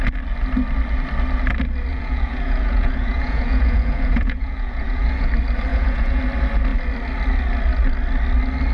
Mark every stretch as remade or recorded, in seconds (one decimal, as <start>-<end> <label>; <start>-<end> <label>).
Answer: 0.0-1.9 recorded; 1.9-5.3 remade; 5.3-5.7 recorded; 5.7-6.2 remade; 6.2-8.7 recorded